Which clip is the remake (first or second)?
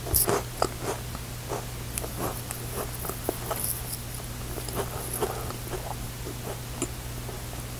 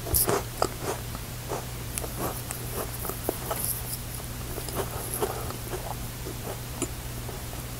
second